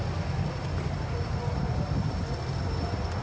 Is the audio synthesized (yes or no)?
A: no